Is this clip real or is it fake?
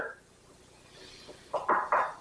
real